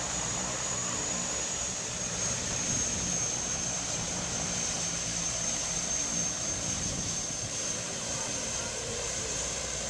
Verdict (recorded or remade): remade